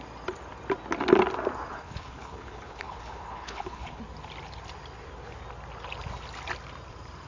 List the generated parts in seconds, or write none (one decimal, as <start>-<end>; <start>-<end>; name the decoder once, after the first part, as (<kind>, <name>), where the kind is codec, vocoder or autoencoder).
1.7-4.0 (codec, HILCodec)